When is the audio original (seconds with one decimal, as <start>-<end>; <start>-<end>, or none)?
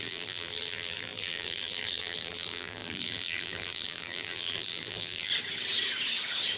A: 5.3-6.6